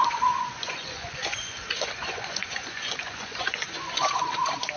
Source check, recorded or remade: remade